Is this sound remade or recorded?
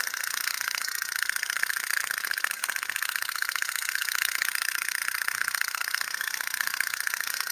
remade